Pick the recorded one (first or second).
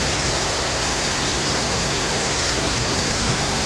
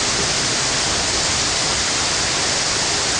second